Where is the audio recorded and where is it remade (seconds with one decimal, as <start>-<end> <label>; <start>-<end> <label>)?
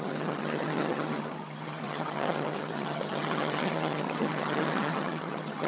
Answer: 0.0-5.7 remade